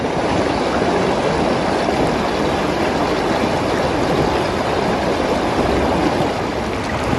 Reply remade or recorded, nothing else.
recorded